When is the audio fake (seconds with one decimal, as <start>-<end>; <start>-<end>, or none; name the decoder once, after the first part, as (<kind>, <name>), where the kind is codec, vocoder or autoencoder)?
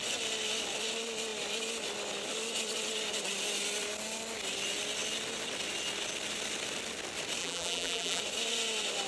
7.4-8.2 (vocoder, BigVGAN v2)